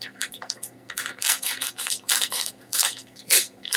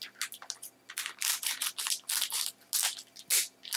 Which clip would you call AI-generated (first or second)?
first